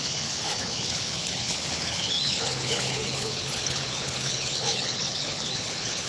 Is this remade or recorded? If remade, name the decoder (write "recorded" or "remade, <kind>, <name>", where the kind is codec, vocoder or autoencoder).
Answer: remade, codec, HILCodec